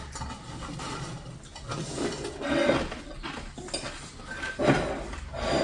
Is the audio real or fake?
real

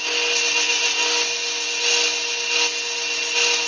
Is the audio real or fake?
real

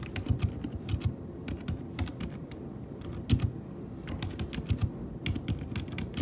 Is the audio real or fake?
real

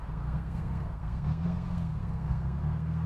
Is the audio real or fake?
fake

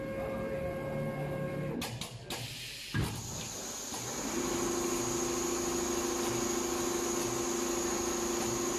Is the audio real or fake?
real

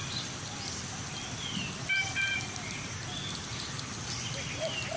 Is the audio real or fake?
real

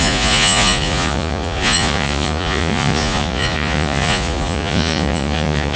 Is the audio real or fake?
fake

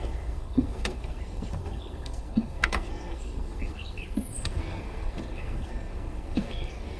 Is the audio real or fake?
fake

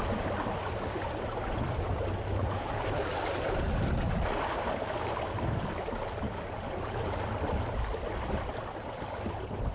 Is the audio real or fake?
real